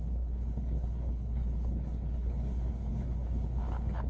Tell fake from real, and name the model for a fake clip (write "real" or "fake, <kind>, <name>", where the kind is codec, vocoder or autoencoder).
fake, codec, HILCodec